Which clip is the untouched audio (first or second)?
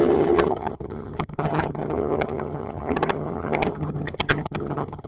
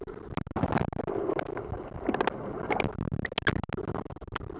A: second